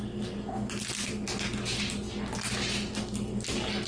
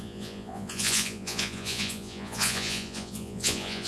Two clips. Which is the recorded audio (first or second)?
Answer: first